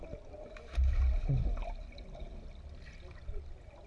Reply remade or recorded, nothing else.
recorded